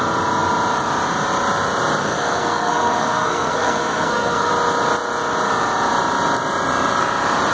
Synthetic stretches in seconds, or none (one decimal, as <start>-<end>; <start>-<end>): 2.0-4.5